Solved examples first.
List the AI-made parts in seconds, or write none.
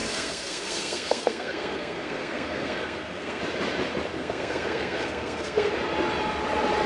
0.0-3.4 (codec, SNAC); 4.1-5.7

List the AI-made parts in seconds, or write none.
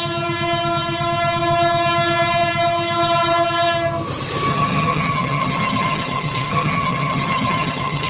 4.5-8.1 (vocoder, HiFi-GAN)